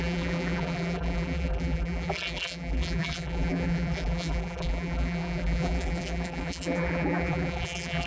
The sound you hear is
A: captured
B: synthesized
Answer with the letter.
B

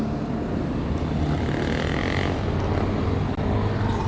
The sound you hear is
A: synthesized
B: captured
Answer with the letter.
B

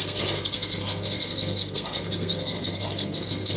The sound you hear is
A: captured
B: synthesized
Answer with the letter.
B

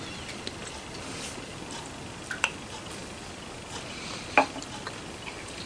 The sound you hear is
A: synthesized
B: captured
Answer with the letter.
B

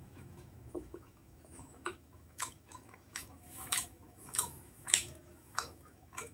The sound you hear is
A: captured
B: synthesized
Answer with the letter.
B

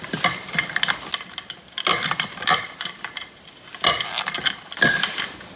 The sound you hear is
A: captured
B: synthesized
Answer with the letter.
B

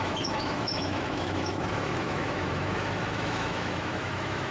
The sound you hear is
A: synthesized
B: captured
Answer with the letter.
A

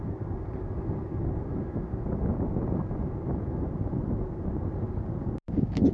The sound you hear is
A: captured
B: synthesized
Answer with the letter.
A